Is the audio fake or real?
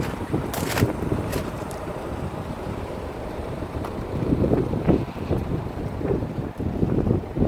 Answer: fake